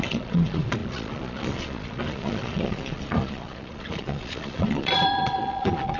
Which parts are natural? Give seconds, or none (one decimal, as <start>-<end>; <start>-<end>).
none